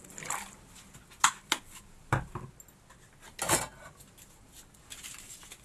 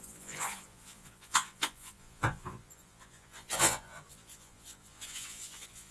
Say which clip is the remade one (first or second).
second